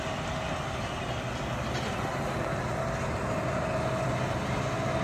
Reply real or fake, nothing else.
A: real